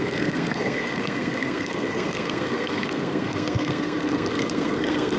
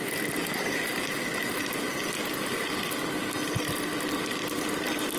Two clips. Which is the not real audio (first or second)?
first